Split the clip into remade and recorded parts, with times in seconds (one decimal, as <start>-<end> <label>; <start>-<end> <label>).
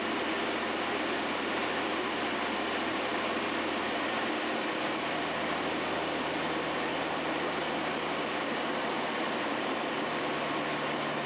0.0-11.3 recorded